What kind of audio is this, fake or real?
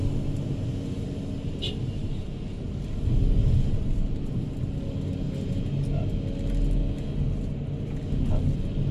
real